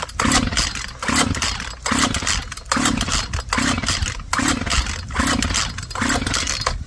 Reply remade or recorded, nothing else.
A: recorded